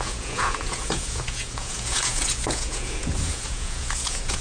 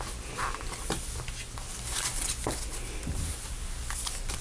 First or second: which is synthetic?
first